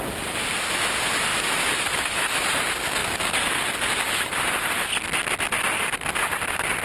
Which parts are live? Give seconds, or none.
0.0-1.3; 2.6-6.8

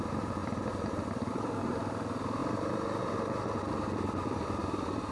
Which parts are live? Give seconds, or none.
0.0-5.1

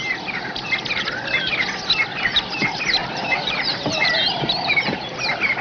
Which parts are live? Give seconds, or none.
0.0-3.0; 4.4-5.6

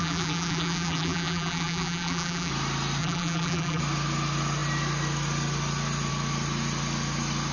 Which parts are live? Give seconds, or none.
2.5-3.0; 3.8-7.5

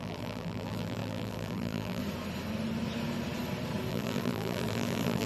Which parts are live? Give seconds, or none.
2.0-3.9

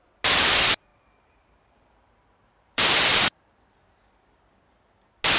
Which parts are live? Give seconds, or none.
0.0-0.9; 4.1-5.4

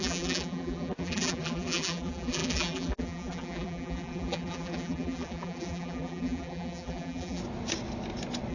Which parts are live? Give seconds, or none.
7.4-8.5